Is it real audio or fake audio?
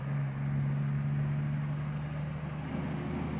real